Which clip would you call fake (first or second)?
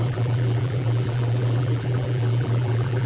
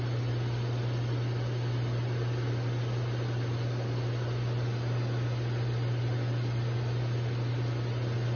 first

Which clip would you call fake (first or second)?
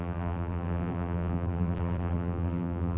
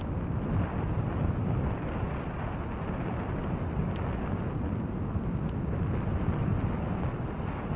first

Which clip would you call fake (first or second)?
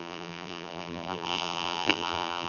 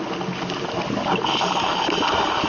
first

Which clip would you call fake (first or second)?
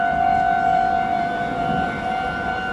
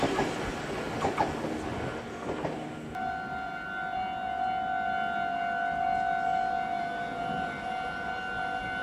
first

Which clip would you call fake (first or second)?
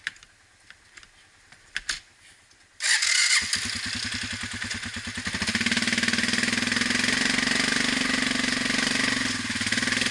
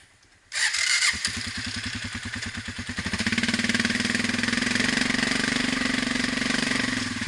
second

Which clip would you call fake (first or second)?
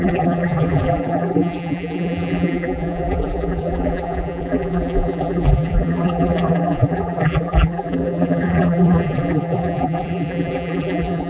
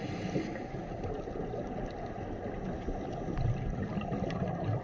first